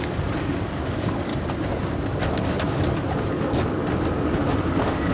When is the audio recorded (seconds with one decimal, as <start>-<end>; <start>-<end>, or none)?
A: 1.3-3.3; 3.8-4.6